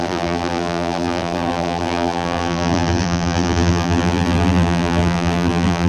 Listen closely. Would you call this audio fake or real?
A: fake